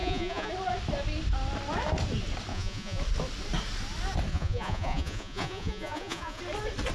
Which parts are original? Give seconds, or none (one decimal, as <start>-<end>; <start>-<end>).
0.5-2.5; 3.0-4.3; 6.4-6.9